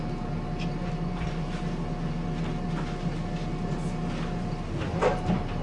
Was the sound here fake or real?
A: real